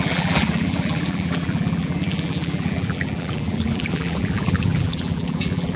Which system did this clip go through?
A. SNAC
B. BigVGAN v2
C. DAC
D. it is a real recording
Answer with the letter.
B